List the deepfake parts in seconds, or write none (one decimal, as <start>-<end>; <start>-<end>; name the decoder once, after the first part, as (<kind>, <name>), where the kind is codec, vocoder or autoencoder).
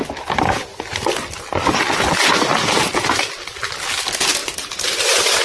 4.4-5.4 (vocoder, BigVGAN v2)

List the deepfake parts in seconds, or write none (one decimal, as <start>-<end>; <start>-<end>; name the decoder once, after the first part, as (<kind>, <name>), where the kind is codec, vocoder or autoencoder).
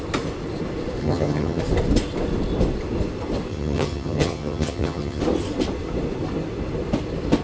1.0-1.6 (vocoder, HiFi-GAN); 3.5-5.2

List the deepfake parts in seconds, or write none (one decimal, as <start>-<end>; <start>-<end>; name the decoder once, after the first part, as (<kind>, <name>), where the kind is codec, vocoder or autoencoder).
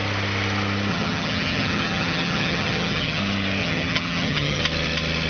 0.9-3.2 (vocoder, HiFi-GAN); 3.6-4.6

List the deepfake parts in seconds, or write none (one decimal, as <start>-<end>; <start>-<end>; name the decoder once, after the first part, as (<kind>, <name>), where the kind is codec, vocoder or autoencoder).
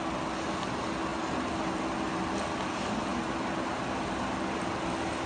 none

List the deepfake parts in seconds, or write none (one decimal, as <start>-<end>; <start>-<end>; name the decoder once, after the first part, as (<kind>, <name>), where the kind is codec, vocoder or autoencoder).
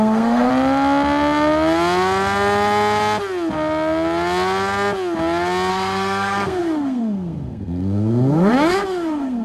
0.0-0.5 (codec, SNAC); 5.7-9.4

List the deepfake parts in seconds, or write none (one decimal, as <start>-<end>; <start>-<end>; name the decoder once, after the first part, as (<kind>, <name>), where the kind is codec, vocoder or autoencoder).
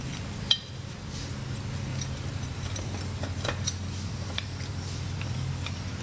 1.9-5.5 (vocoder, BigVGAN v2)